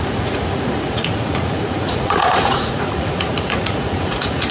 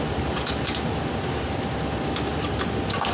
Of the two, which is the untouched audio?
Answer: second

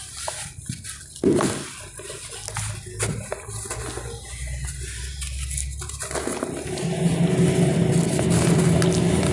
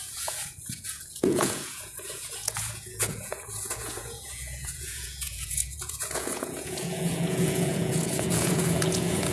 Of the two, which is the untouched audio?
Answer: first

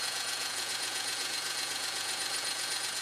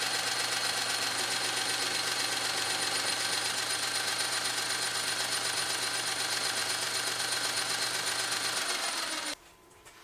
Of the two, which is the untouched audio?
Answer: second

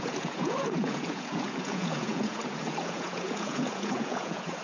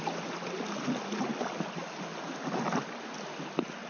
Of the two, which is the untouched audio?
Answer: second